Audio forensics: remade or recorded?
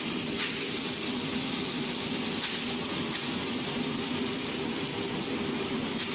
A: recorded